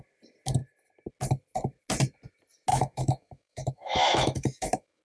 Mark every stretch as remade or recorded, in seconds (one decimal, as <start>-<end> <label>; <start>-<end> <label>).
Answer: 0.0-2.7 recorded; 2.7-5.0 remade